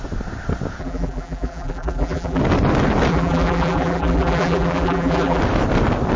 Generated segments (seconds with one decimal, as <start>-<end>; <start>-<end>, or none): 0.8-2.4; 3.1-5.4